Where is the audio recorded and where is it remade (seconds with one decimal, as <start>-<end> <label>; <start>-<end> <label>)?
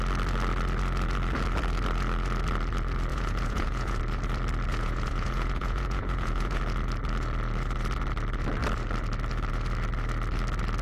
0.0-3.1 recorded; 3.1-4.0 remade; 4.0-4.7 recorded; 4.7-6.6 remade; 6.6-10.8 recorded